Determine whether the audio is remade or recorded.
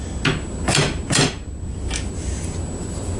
recorded